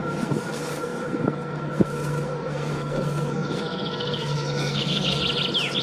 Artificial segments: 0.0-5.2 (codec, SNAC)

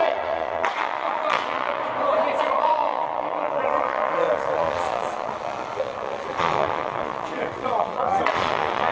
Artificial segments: 0.0-1.8 (vocoder, Vocos); 2.4-8.9

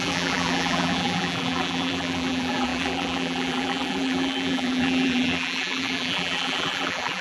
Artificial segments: 0.0-7.2 (vocoder, BigVGAN v2)

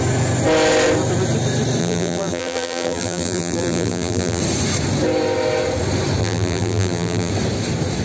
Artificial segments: 1.8-4.4 (vocoder, BigVGAN v2); 6.2-7.3

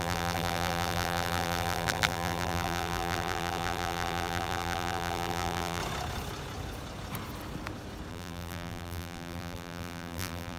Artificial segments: 0.0-5.8 (vocoder, BigVGAN v2); 8.1-10.6

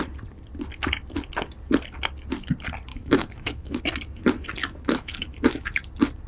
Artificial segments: 2.9-3.8 (autoencoder, DAC-VAE); 4.6-5.8